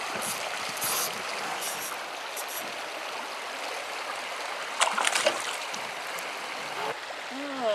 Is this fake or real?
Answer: real